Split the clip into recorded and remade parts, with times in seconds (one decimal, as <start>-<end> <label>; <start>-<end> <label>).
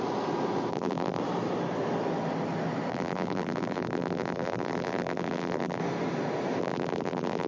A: 0.0-0.7 recorded; 0.7-1.2 remade; 1.2-2.9 recorded; 2.9-5.8 remade; 5.8-6.6 recorded; 6.6-7.5 remade